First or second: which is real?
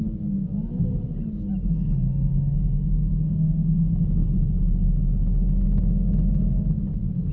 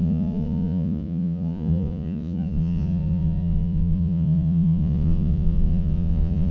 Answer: first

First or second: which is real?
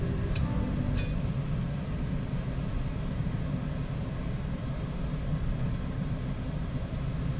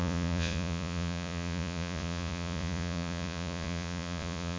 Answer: first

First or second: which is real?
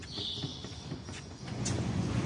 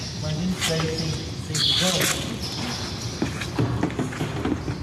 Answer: second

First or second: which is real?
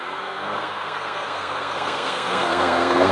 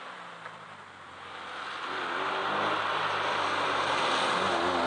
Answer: second